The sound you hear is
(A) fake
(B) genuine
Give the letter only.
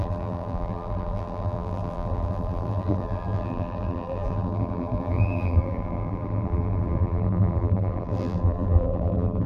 A